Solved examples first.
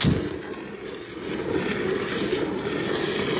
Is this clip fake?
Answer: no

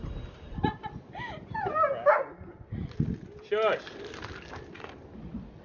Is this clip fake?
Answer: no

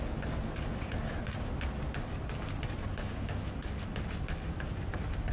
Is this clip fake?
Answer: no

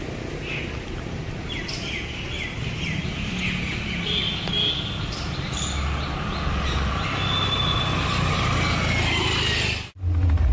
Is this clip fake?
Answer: no